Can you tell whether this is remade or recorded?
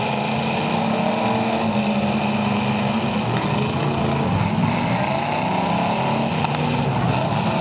recorded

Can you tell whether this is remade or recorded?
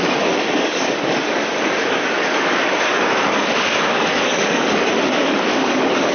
remade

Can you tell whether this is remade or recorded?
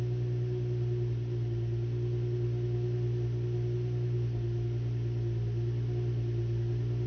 recorded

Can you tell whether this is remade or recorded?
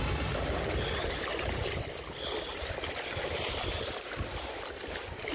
recorded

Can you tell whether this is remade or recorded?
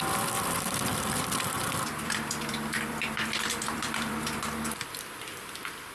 remade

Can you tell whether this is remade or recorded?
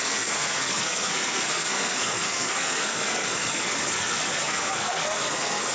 remade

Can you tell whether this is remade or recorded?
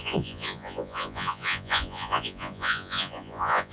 remade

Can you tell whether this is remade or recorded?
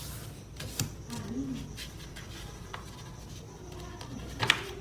recorded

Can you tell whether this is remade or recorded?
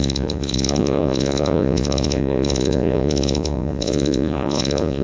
remade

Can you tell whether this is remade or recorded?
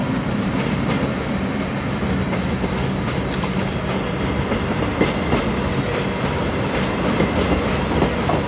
recorded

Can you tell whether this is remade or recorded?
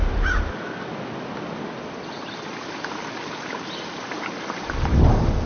recorded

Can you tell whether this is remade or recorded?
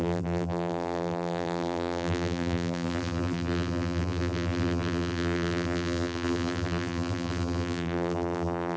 remade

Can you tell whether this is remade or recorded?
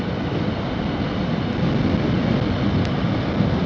recorded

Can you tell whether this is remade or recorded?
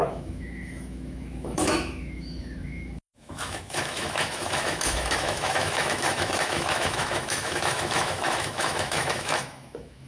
remade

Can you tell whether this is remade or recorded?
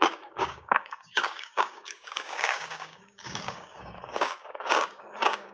remade